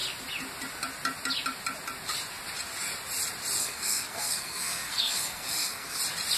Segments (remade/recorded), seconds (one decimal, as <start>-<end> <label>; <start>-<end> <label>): 0.0-3.6 recorded; 3.6-6.0 remade; 6.0-6.4 recorded